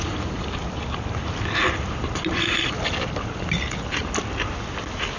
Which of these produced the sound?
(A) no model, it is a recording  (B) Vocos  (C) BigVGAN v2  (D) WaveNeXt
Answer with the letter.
A